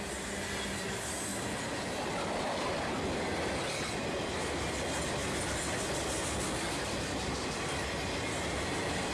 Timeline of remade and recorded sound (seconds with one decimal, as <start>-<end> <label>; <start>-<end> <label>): 0.0-9.1 recorded